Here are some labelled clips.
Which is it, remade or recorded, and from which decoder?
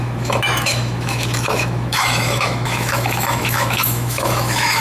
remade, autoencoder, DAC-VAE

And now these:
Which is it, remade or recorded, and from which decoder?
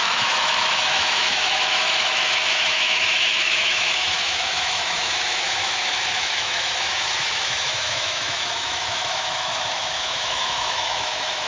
remade, autoencoder, DAC-VAE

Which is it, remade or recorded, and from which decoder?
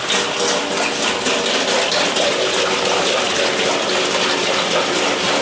recorded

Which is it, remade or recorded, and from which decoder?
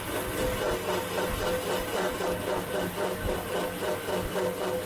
recorded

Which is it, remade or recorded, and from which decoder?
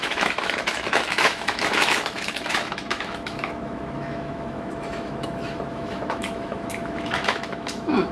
remade, autoencoder, DAC-VAE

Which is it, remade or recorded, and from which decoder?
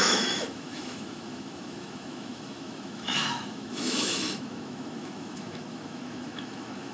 remade, autoencoder, DAC-VAE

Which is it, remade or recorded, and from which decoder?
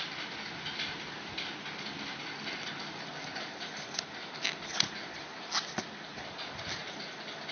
recorded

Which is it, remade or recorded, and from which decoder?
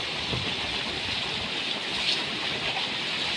recorded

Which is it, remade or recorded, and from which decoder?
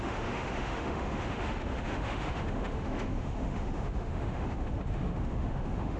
remade, autoencoder, DAC-VAE